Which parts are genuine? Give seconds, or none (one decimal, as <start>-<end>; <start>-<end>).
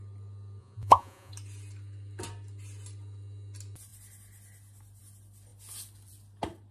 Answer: 0.0-0.6; 1.3-6.7